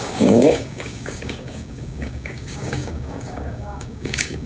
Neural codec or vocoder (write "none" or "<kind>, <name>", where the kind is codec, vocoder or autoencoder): codec, DAC